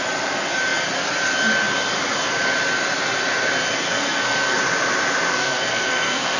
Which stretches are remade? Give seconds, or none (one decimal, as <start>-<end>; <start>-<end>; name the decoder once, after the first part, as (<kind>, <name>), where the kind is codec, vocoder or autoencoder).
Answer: 3.9-4.6 (codec, SNAC); 5.3-6.4